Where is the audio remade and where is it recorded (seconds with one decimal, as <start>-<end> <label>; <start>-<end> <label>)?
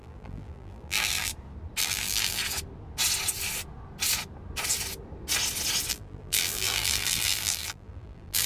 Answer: 0.0-1.3 remade; 1.3-1.8 recorded; 1.8-2.4 remade; 2.4-5.9 recorded; 5.9-8.5 remade